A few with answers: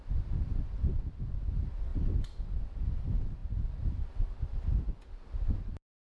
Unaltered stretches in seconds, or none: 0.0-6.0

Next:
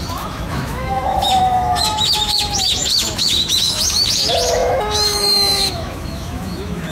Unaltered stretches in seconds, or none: none